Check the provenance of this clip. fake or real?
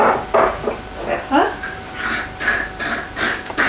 real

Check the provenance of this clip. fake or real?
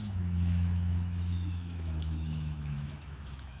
fake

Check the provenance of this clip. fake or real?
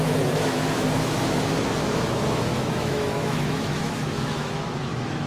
fake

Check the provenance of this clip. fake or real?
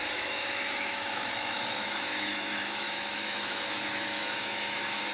fake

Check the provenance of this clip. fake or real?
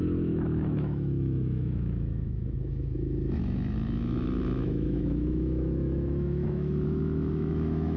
fake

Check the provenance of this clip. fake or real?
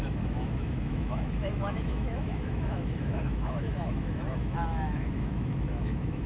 fake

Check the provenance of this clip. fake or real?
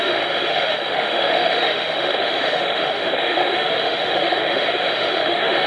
fake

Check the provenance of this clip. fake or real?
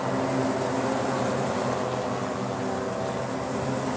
real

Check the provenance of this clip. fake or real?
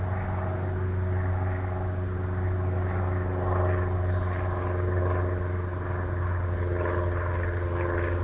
real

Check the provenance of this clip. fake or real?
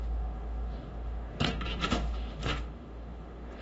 fake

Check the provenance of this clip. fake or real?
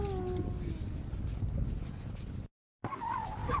real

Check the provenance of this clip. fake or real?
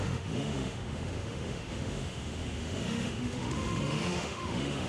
fake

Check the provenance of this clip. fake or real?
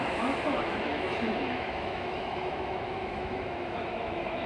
fake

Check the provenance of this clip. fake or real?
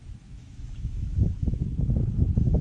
fake